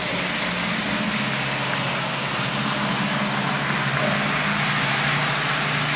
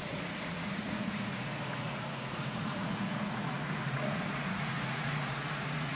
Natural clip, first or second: first